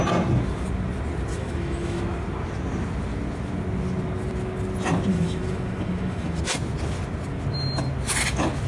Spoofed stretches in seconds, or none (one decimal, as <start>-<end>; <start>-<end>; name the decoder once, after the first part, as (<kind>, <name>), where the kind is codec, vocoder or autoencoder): 1.3-2.0 (autoencoder, DAC-VAE); 5.1-6.4